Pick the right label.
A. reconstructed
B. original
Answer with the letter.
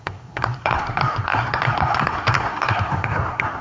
A